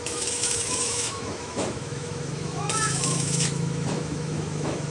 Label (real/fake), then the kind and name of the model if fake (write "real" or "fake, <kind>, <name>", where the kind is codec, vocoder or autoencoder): fake, autoencoder, DAC-VAE